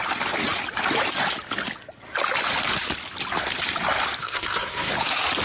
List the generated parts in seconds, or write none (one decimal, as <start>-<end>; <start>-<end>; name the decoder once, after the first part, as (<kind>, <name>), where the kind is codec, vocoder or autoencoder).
4.2-4.9 (codec, SNAC)